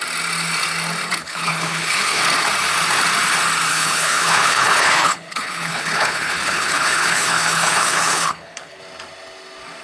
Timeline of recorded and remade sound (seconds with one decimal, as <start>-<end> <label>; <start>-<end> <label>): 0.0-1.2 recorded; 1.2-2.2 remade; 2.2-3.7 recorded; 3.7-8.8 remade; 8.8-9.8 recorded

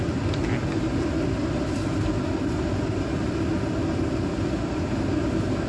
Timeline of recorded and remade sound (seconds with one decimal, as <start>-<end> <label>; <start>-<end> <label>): 0.0-5.7 recorded

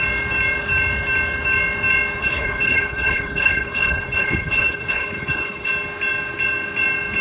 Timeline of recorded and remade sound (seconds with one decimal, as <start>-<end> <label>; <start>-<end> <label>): 0.0-2.2 recorded; 2.2-5.7 remade; 5.7-7.2 recorded

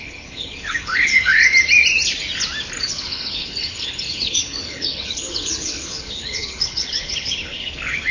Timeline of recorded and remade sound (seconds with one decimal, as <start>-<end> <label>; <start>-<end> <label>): 0.0-1.4 remade; 1.4-2.8 recorded; 2.8-8.1 remade

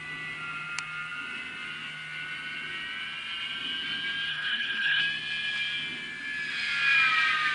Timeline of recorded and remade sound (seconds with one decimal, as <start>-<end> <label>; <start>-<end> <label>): 0.0-4.3 recorded; 4.3-5.0 remade; 5.0-7.5 recorded